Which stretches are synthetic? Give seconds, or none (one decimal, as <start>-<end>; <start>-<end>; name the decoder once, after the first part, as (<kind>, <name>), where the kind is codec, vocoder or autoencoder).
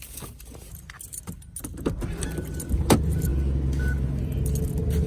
none